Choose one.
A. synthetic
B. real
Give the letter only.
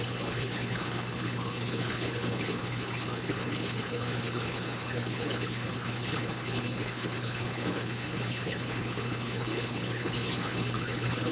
A